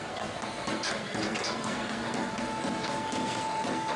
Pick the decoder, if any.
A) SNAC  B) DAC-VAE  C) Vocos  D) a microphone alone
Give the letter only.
A